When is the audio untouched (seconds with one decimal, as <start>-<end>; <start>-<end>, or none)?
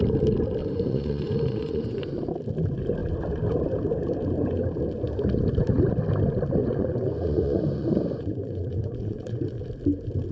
0.0-0.6; 2.3-6.6; 9.7-10.3